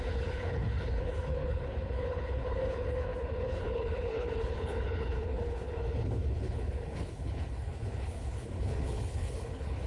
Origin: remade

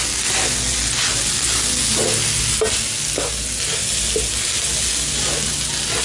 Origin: recorded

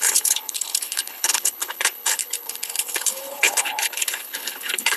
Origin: remade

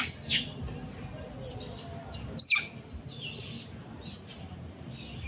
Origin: recorded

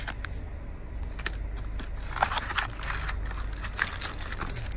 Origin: recorded